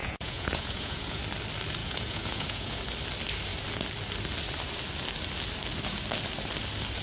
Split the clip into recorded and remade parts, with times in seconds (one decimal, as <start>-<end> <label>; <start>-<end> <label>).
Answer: 0.0-1.2 remade; 1.2-1.8 recorded; 1.8-2.8 remade; 2.8-7.0 recorded